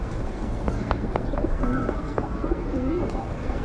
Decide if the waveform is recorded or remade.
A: remade